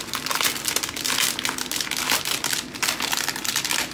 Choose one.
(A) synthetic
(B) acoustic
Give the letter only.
B